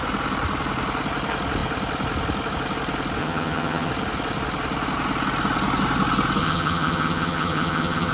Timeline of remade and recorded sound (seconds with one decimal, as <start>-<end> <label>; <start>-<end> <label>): 0.0-3.2 recorded; 3.2-3.9 remade; 3.9-6.4 recorded; 6.4-8.1 remade